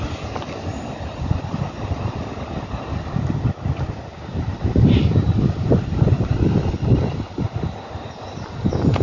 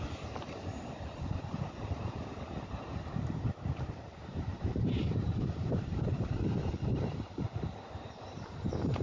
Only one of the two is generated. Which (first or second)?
second